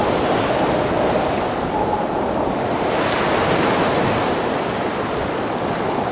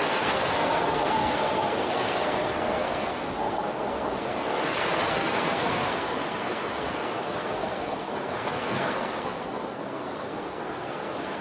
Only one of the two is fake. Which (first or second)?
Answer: second